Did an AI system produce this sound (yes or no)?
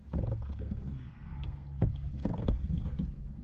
yes